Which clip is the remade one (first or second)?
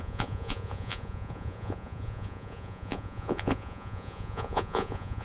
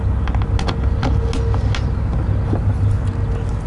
first